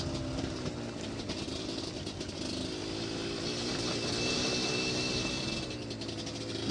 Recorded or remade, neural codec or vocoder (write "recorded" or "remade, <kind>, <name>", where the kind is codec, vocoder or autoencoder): recorded